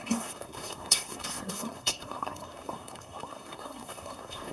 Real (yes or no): no